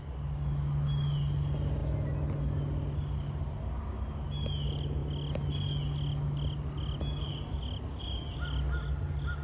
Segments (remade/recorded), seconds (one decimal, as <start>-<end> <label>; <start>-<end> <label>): 0.0-9.4 recorded

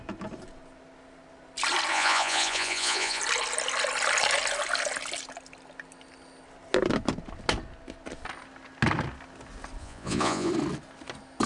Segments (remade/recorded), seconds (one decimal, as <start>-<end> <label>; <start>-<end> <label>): 0.0-1.9 recorded; 1.9-3.2 remade; 3.2-9.8 recorded; 9.8-10.5 remade; 10.5-11.5 recorded

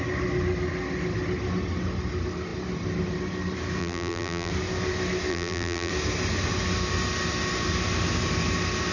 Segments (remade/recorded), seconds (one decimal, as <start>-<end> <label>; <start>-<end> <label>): 0.0-3.8 recorded; 3.8-4.5 remade; 4.5-5.3 recorded; 5.3-5.9 remade; 5.9-8.9 recorded

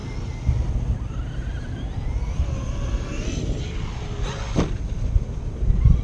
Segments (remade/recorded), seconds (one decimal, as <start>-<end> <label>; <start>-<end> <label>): 0.0-6.0 recorded